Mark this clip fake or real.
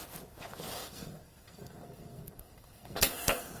fake